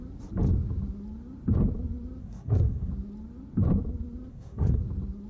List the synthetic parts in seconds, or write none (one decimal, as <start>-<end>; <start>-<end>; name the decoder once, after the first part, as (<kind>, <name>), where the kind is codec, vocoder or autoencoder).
2.2-2.9 (codec, SNAC); 4.3-4.8